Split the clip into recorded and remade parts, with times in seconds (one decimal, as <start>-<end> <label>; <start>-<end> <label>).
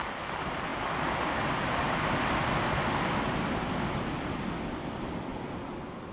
0.0-6.1 recorded